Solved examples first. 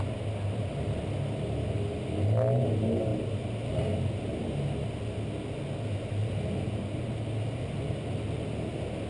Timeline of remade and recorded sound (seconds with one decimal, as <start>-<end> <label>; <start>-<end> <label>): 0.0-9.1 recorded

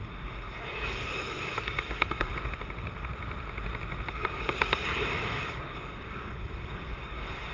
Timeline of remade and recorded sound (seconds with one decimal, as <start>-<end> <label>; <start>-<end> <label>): 0.0-2.3 remade; 2.3-4.1 recorded; 4.1-7.5 remade

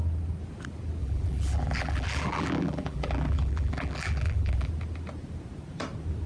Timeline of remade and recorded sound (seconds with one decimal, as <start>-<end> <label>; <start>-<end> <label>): 0.0-1.0 recorded; 1.0-4.7 remade; 4.7-6.3 recorded

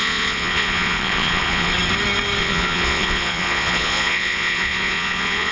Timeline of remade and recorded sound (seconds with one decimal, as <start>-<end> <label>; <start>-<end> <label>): 0.0-1.7 remade; 1.7-2.4 recorded; 2.4-5.5 remade

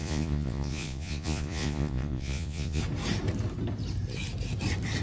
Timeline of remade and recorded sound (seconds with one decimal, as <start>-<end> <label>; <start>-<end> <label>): 0.0-2.8 remade; 2.8-5.0 recorded

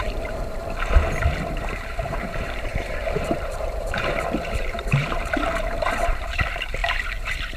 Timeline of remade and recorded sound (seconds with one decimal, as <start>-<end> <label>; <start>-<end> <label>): 0.0-0.6 remade; 0.6-1.7 recorded; 1.7-7.6 remade

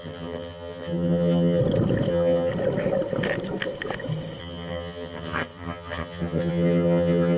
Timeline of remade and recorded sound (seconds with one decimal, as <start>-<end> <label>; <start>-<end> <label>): 0.0-1.6 remade; 1.6-2.1 recorded; 2.1-2.5 remade; 2.5-4.4 recorded; 4.4-7.4 remade